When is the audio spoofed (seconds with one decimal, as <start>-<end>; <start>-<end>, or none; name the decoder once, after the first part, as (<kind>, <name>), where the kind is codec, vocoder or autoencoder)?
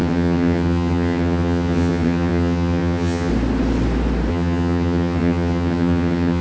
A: 0.0-3.3 (vocoder, HiFi-GAN); 4.3-6.4